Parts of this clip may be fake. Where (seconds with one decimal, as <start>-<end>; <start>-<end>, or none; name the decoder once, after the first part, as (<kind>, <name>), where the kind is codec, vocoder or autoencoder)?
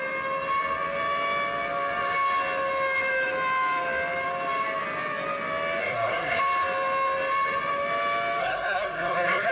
5.8-6.4 (codec, SNAC); 8.4-9.5